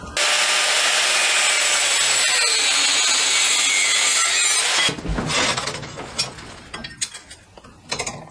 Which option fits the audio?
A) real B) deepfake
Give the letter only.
A